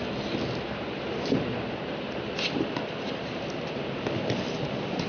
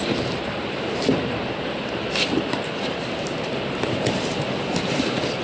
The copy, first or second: second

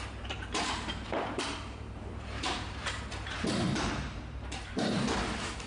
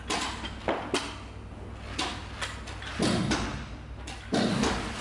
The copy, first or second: first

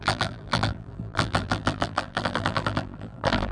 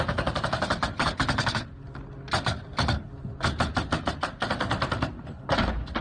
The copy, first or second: first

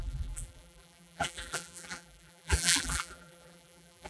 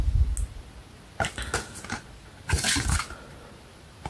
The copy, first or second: first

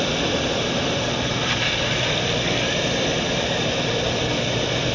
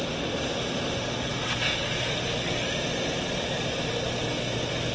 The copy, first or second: first